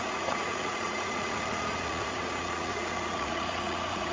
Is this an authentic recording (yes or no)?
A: no